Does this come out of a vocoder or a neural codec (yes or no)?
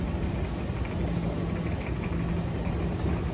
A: no